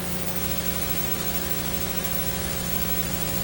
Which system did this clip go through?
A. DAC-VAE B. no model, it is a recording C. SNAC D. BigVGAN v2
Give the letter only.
A